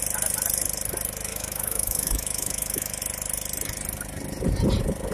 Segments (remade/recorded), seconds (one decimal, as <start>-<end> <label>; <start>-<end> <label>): 0.0-1.3 recorded; 1.3-3.0 remade; 3.0-5.1 recorded